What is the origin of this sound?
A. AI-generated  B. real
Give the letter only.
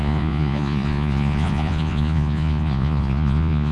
A